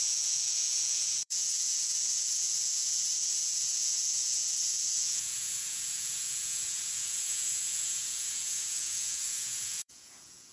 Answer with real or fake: fake